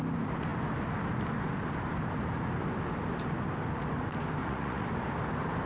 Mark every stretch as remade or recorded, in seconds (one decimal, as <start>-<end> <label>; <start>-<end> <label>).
0.0-4.4 recorded; 4.4-4.9 remade; 4.9-5.7 recorded